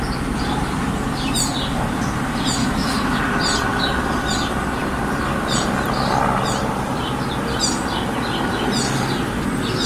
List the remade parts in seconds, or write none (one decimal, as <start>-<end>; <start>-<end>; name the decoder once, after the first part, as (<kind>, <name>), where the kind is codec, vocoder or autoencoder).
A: 2.6-3.2 (autoencoder, DAC-VAE)